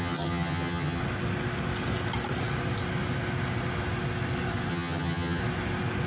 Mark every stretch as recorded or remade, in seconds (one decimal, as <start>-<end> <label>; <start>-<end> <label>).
0.0-1.0 remade; 1.0-4.7 recorded; 4.7-5.4 remade; 5.4-6.1 recorded